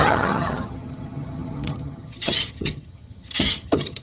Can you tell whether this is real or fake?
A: fake